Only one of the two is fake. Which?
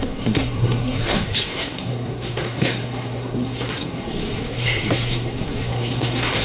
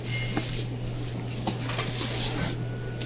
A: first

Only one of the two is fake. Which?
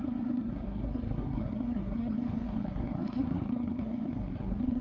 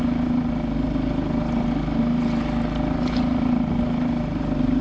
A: first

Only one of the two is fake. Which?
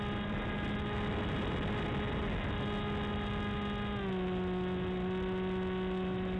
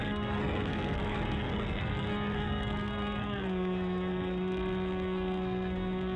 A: second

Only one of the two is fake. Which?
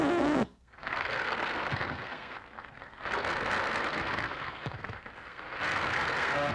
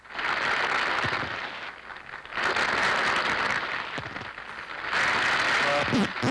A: first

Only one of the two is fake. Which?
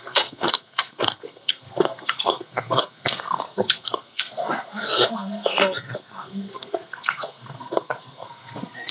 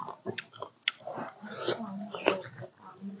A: first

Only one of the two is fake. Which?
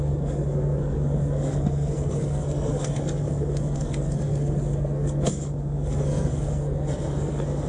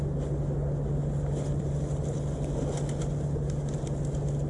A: first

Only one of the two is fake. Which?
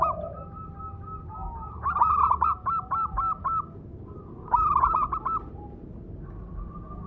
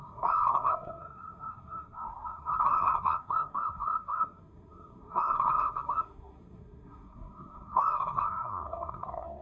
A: second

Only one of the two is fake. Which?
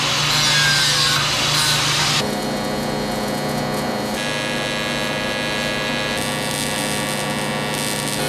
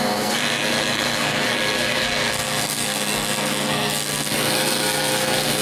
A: second